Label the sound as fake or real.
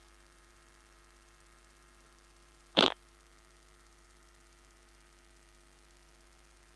fake